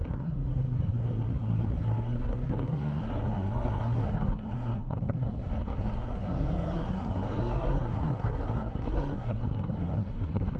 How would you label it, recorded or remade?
remade